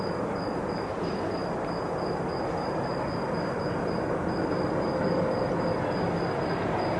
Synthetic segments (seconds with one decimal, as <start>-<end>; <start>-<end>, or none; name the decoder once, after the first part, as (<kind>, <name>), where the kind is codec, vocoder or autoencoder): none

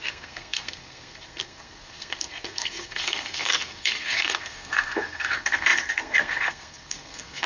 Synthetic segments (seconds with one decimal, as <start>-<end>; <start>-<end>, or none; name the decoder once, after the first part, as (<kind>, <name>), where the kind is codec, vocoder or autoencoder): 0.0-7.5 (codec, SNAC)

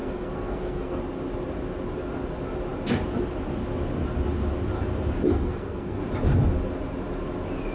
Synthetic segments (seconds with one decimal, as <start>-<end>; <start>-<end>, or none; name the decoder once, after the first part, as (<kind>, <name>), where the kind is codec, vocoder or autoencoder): 0.0-1.0 (codec, SNAC); 5.3-6.0

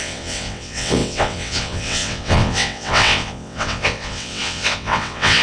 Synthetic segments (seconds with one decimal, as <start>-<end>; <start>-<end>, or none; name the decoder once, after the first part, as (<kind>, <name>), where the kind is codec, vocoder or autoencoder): 0.0-5.4 (vocoder, WaveNeXt)

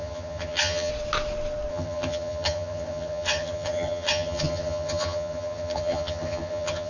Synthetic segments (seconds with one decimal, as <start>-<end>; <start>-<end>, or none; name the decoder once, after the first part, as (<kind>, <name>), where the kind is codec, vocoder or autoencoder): 0.0-0.9 (vocoder, HiFi-GAN); 1.7-6.9